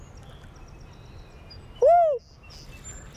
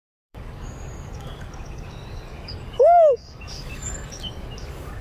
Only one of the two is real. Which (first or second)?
first